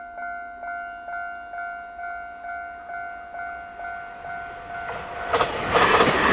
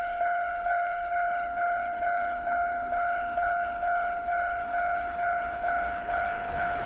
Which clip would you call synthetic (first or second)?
second